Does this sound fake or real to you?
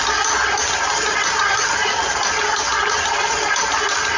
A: real